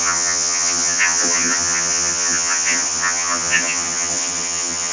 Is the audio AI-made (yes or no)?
yes